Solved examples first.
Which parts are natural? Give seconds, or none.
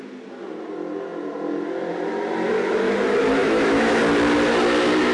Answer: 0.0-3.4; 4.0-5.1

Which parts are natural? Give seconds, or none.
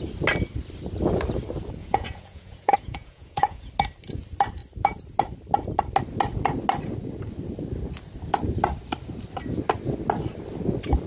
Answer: 0.0-1.8; 3.7-11.1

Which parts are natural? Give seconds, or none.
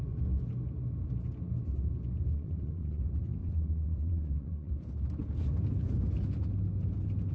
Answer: 0.0-2.3; 3.0-3.4; 4.7-7.3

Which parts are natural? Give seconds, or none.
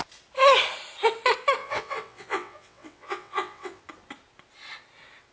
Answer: 0.0-1.6; 3.8-5.3